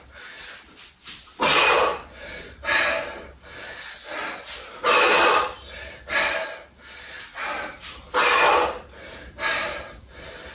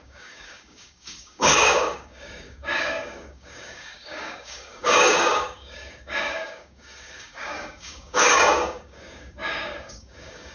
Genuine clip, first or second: first